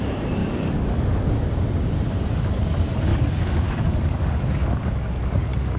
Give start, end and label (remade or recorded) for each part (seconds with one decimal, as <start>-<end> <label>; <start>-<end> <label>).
0.0-0.4 recorded; 0.4-1.4 remade; 1.4-3.1 recorded; 3.1-5.8 remade